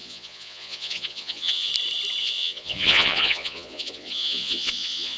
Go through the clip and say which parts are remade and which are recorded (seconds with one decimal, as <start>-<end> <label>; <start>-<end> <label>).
0.0-1.7 remade; 1.7-2.2 recorded; 2.2-5.2 remade